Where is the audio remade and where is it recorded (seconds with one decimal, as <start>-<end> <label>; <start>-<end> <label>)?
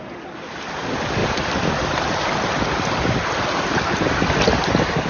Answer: 0.0-1.2 recorded; 1.2-4.3 remade; 4.3-5.1 recorded